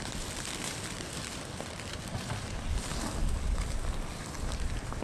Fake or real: fake